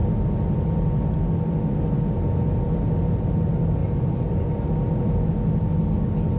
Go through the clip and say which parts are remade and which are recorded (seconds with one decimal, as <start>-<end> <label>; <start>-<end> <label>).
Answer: 0.0-6.4 recorded